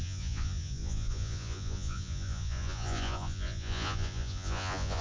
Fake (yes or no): yes